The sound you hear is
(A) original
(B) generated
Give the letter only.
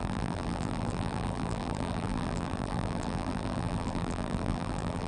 B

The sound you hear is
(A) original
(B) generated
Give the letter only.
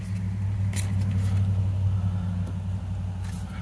A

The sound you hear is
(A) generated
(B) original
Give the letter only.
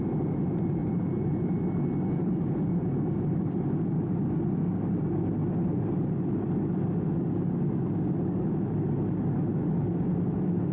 B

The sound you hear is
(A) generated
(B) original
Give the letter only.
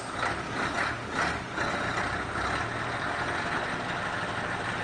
B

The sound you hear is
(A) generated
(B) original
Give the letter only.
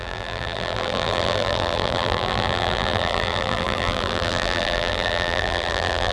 A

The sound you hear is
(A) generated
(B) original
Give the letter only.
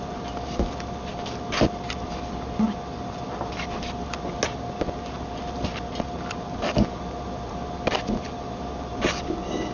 B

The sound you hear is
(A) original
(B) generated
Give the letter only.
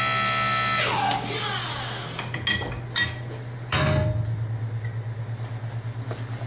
A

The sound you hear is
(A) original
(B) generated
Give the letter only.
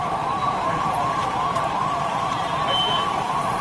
B